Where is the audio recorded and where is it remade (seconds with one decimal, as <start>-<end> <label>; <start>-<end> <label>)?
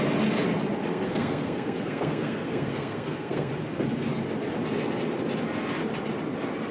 0.0-0.9 recorded; 0.9-3.5 remade; 3.5-6.7 recorded